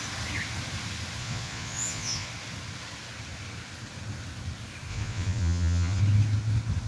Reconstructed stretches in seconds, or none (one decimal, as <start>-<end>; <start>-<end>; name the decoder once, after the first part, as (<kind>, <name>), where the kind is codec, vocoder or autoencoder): 1.2-2.3 (vocoder, Vocos); 4.9-6.0